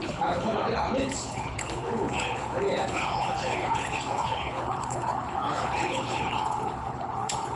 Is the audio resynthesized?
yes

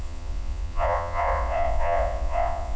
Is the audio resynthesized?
yes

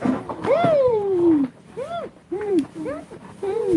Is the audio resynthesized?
yes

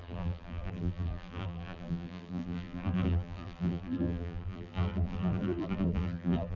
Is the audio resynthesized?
yes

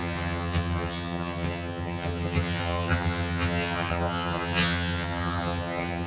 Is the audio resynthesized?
yes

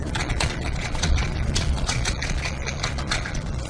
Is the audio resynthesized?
yes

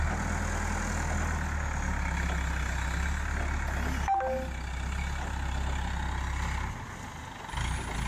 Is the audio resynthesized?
no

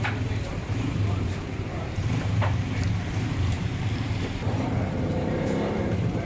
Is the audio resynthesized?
yes